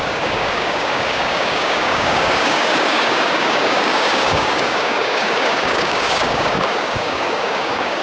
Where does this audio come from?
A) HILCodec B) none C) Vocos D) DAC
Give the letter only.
D